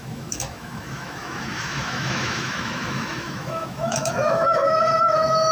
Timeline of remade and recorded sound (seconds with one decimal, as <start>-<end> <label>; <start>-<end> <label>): 0.0-5.5 remade